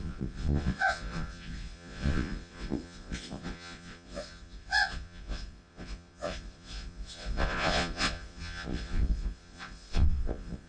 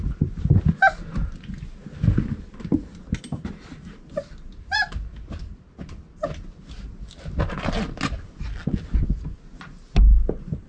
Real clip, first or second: second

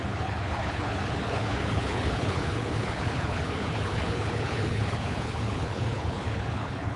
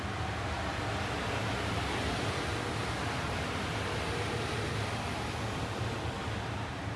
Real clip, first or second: second